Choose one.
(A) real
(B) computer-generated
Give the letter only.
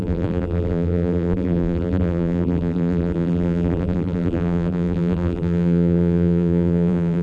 B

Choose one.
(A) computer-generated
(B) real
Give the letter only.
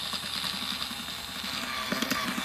B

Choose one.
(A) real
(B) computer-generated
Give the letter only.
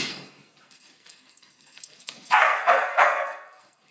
B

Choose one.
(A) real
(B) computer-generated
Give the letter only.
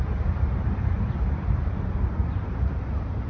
A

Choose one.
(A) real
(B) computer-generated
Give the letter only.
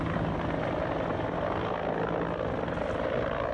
A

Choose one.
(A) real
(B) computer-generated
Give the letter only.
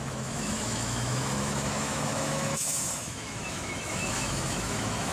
B